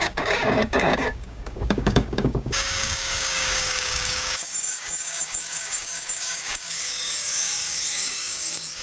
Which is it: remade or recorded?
remade